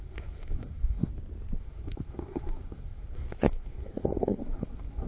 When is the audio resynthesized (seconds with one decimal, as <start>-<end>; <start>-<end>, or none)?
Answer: 0.0-1.1; 1.6-5.1